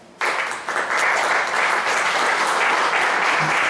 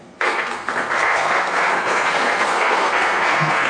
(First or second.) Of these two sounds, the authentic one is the first